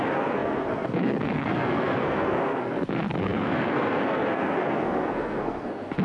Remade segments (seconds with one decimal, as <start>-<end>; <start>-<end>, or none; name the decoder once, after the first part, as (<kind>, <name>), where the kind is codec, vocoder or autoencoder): 0.0-6.0 (codec, SNAC)